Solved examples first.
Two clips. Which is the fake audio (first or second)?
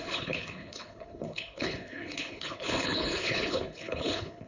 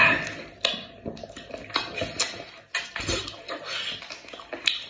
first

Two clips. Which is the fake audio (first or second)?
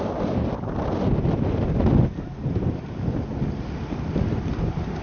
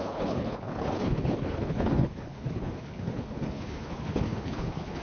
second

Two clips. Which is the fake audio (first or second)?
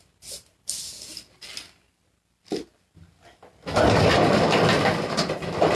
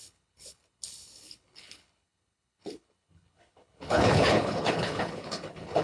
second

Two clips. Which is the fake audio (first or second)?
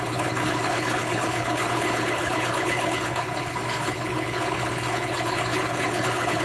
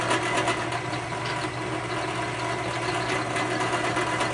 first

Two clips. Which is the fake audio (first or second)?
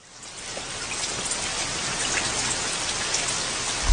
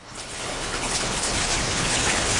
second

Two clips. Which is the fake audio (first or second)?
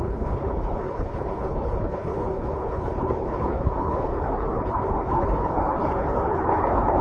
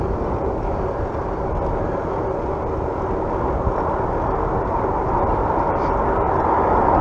first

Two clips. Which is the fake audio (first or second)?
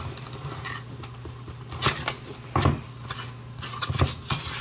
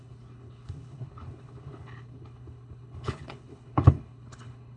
second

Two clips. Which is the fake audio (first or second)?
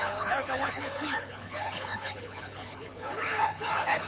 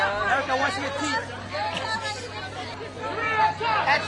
first